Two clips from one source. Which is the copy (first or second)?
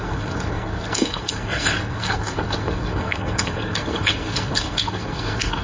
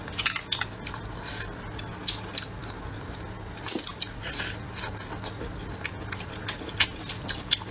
first